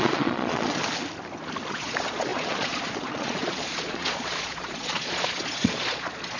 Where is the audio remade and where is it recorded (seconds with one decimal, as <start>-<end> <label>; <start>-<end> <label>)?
0.0-0.8 remade; 0.8-1.7 recorded; 1.7-6.4 remade